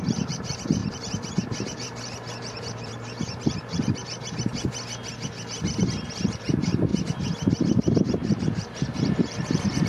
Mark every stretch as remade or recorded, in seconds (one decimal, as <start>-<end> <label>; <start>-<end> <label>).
0.0-4.0 remade; 4.0-5.8 recorded; 5.8-6.9 remade; 6.9-8.0 recorded; 8.0-9.9 remade